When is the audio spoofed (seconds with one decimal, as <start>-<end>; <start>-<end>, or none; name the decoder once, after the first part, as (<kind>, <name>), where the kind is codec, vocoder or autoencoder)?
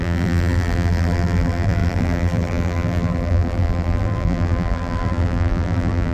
0.0-6.1 (vocoder, BigVGAN v2)